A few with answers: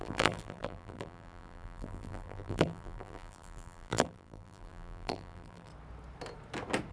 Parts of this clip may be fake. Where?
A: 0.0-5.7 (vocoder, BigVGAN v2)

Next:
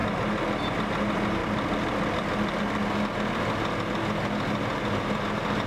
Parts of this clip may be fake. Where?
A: 1.4-2.6 (vocoder, BigVGAN v2)